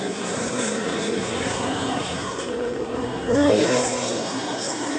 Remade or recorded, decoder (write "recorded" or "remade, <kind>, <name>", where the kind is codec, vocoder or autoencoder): remade, codec, SNAC